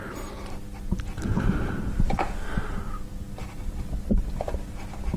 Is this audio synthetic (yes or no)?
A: no